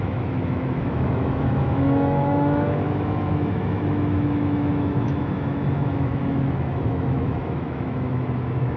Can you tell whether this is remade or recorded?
remade